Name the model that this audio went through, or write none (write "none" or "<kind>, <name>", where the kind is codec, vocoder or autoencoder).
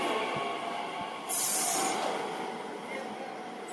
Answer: none